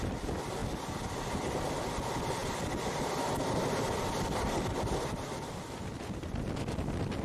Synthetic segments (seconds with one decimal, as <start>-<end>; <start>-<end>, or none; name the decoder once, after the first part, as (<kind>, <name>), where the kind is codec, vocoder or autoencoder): none